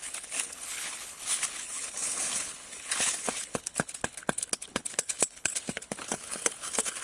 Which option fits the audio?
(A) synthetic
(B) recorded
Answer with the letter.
A